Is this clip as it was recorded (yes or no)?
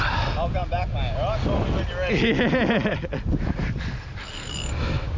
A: yes